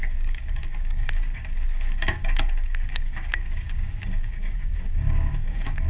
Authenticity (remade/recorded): remade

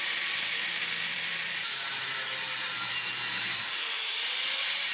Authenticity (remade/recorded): remade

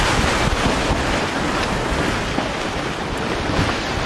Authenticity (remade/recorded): recorded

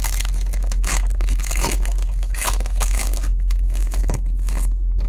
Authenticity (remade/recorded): remade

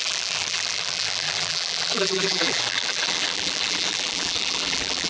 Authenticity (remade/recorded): remade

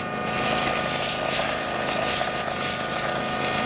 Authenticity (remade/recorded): recorded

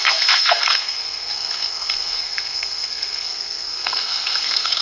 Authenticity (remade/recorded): remade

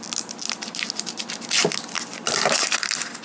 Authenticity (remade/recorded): recorded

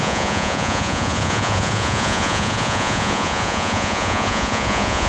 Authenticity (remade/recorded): remade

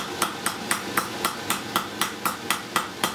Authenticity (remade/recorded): recorded